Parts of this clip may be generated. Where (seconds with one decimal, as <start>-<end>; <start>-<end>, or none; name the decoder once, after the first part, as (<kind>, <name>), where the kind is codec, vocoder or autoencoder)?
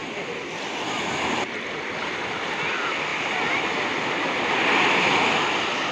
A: none